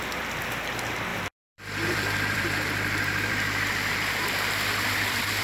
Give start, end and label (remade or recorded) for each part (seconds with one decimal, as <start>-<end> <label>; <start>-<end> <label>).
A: 0.0-5.4 remade